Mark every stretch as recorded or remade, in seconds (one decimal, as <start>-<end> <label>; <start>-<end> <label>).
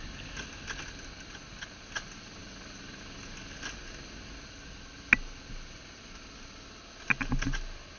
0.0-8.0 recorded